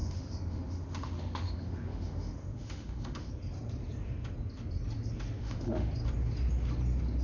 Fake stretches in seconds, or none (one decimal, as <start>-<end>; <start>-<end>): 0.0-3.3; 5.4-5.9